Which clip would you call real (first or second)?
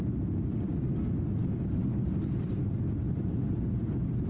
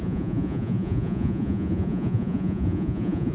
first